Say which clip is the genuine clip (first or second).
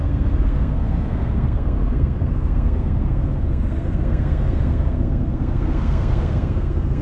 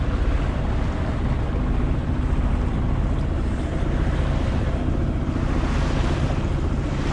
second